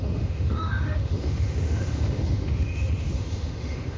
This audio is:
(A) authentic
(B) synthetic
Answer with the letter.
B